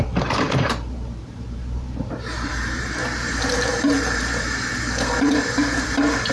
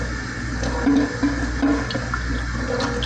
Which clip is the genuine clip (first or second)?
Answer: second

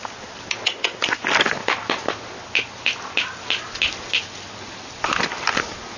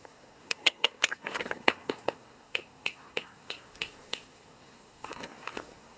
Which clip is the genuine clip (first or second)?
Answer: first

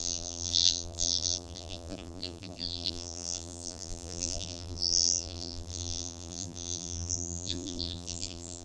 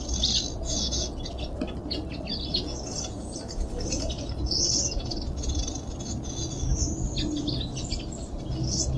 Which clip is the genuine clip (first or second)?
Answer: second